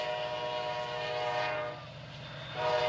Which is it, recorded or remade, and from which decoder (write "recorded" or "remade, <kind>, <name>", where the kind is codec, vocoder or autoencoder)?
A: recorded